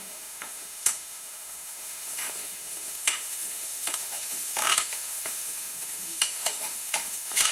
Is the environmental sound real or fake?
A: fake